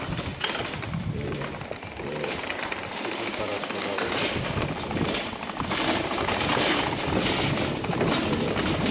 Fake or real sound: real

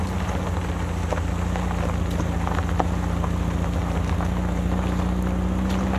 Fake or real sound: real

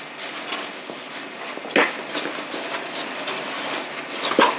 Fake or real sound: real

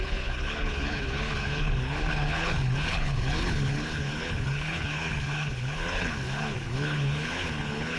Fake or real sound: fake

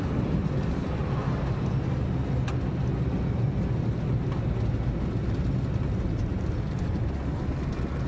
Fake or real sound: real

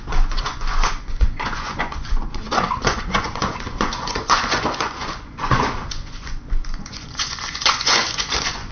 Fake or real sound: fake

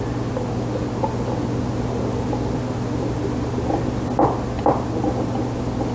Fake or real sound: real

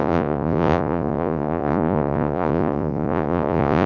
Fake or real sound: fake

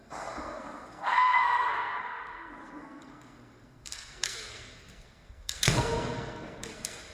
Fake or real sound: fake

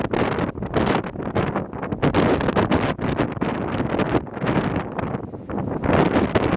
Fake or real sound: real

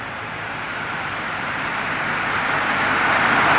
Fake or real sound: fake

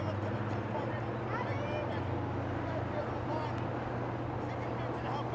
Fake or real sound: real